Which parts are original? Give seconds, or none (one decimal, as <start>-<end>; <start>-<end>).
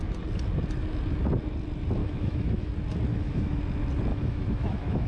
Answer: 0.0-2.0; 2.7-3.1; 3.6-4.1